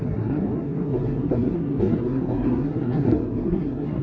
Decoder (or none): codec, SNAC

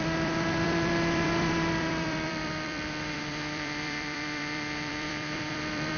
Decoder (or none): vocoder, BigVGAN v2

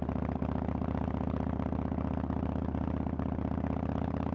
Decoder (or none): none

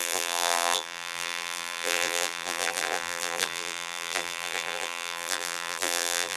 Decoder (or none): vocoder, BigVGAN v2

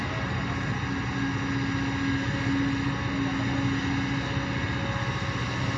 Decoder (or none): none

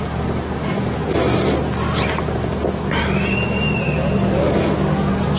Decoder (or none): none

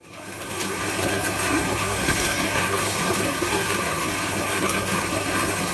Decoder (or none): codec, SNAC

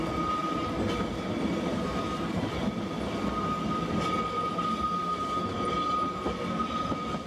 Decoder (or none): none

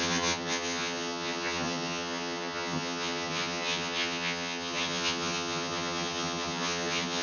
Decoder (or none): vocoder, HiFi-GAN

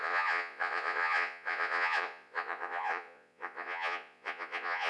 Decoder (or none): vocoder, Vocos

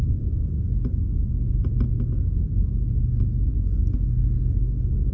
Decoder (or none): none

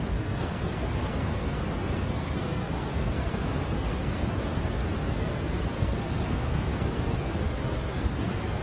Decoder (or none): codec, SNAC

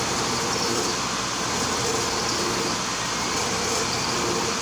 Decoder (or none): none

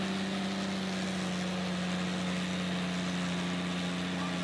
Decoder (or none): none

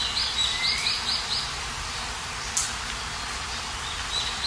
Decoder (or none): none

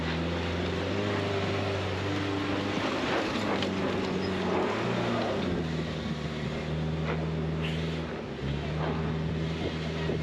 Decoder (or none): none